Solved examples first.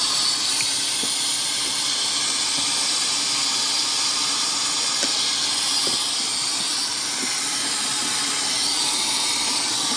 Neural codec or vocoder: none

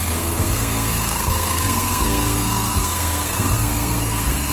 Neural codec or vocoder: codec, SNAC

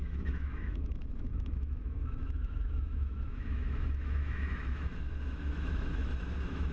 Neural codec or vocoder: autoencoder, DAC-VAE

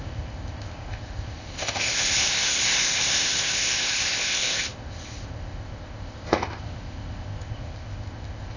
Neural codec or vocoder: codec, ZipCodec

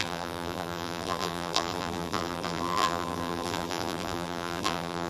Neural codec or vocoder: vocoder, BigVGAN v2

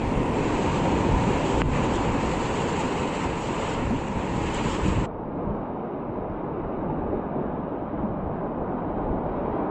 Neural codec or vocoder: none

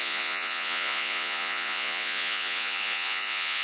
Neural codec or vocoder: vocoder, Vocos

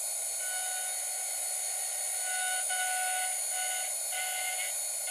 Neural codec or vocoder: none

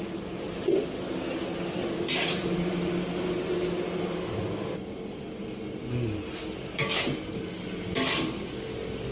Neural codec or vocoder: none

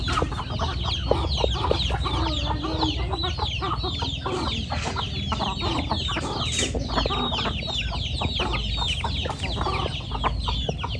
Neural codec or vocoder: none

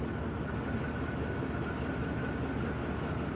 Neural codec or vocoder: none